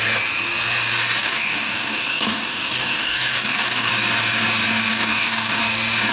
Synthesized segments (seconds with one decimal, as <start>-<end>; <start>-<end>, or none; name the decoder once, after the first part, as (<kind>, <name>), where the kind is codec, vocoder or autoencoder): 1.2-3.9 (codec, DAC); 4.9-5.6